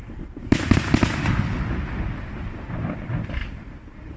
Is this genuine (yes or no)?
yes